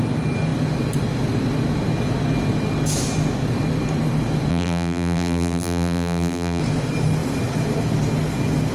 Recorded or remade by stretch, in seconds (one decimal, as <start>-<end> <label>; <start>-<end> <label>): 0.0-4.5 recorded; 4.5-6.6 remade; 6.6-8.7 recorded